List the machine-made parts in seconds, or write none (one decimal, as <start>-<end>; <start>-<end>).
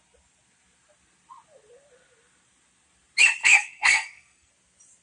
3.4-4.5